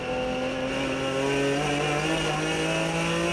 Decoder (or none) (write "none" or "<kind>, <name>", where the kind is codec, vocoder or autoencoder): none